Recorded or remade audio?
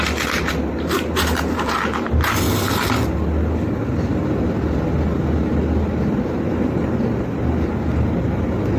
recorded